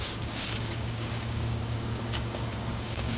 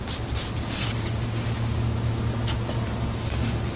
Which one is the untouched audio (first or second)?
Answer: second